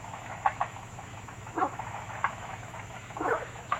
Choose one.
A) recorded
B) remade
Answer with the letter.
B